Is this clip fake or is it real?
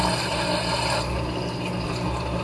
real